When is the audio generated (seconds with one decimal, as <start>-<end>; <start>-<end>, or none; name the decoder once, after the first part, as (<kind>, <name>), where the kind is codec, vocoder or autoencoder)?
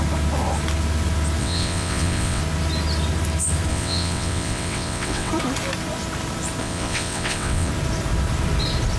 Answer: 1.4-2.4 (vocoder, WaveNeXt); 3.7-5.3; 6.6-7.7